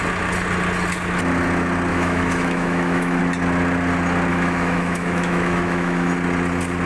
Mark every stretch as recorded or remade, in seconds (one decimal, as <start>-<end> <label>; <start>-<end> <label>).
0.0-1.9 recorded; 1.9-3.2 remade; 3.2-4.3 recorded; 4.3-6.1 remade; 6.1-6.9 recorded